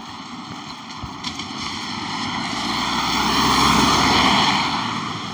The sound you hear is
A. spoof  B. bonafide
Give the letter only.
B